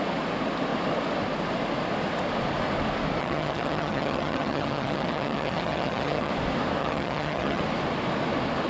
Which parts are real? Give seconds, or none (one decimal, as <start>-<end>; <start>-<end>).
0.0-3.2; 6.3-6.8; 7.6-8.7